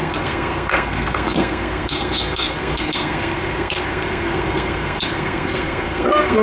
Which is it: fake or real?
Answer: fake